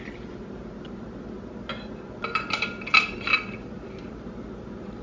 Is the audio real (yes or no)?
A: yes